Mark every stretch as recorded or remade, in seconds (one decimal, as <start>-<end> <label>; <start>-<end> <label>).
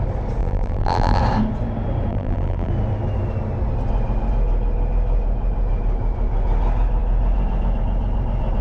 0.0-0.4 recorded; 0.4-1.2 remade; 1.2-2.1 recorded; 2.1-2.7 remade; 2.7-8.6 recorded